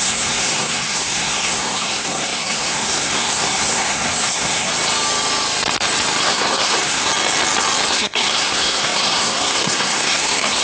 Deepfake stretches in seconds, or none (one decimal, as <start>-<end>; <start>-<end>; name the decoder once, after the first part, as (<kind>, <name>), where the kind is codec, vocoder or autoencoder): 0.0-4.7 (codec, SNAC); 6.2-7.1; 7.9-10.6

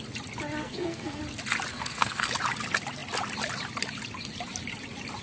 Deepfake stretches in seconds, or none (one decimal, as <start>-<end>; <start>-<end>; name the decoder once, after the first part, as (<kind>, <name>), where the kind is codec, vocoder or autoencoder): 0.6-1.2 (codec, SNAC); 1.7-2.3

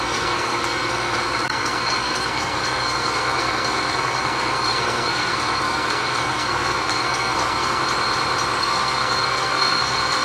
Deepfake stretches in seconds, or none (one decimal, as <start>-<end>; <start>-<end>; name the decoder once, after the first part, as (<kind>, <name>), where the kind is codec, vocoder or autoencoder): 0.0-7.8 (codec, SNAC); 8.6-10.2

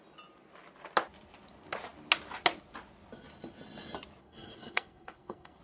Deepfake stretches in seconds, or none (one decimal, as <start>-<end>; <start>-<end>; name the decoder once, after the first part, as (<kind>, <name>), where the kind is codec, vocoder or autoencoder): 4.2-5.6 (codec, SNAC)

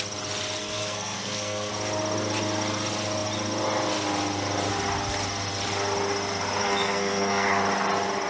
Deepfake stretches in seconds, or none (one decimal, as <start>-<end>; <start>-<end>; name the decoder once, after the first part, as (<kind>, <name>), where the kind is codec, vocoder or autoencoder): 0.6-1.7 (codec, SNAC); 6.6-7.6

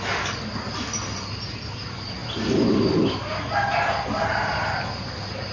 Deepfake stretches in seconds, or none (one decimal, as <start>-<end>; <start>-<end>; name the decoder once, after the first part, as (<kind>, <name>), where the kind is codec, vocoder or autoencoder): none

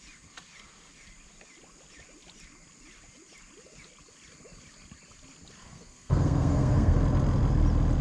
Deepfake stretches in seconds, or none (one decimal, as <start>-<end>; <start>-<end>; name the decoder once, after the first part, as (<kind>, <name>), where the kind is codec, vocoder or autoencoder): 5.6-7.0 (codec, SNAC)

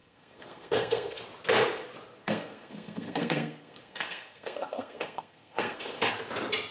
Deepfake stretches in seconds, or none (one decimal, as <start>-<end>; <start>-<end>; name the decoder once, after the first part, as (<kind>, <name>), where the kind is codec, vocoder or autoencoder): 0.0-1.2 (codec, SNAC); 2.1-6.1